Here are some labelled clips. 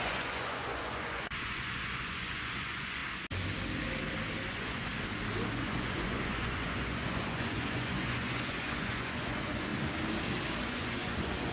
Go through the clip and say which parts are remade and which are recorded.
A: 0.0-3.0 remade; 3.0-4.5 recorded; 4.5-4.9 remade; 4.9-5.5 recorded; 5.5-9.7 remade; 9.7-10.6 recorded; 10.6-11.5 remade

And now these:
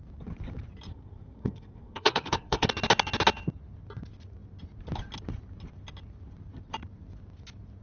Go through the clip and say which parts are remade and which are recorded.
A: 0.0-0.9 recorded; 0.9-2.7 remade; 2.7-7.8 recorded

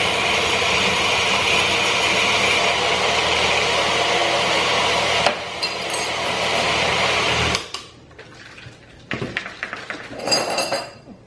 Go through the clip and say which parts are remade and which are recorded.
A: 0.0-4.2 recorded; 4.2-4.8 remade; 4.8-11.3 recorded